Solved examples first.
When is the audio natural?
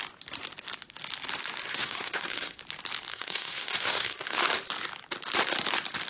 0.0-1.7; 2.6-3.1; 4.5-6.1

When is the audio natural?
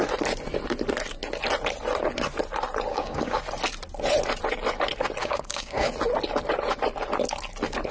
0.0-2.9; 3.4-5.2; 5.9-7.9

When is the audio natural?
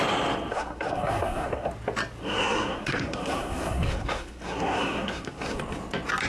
0.0-0.5; 1.7-2.2; 5.6-6.3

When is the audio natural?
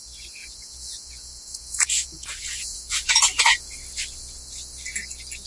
0.0-0.4; 3.7-5.5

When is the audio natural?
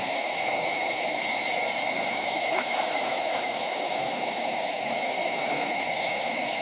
1.2-2.1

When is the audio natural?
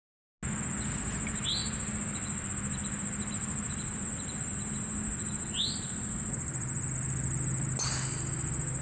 0.0-8.8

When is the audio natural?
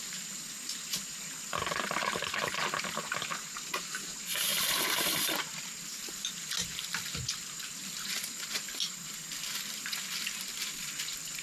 0.0-4.5; 9.1-11.4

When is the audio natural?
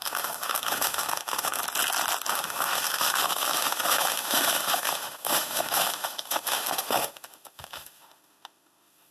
1.6-2.3